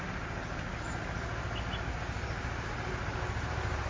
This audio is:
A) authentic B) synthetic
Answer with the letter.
A